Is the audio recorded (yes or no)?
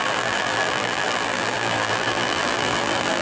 no